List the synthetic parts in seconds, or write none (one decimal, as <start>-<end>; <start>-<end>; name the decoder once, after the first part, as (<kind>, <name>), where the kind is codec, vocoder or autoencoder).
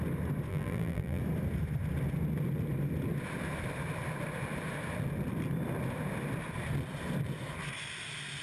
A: 0.5-1.2 (vocoder, BigVGAN v2)